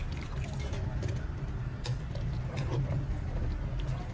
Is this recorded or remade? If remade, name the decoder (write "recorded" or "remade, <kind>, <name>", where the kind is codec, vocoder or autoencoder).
recorded